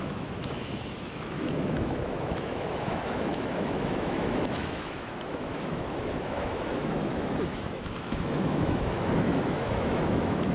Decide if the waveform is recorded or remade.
remade